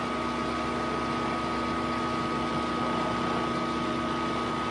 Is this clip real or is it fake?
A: real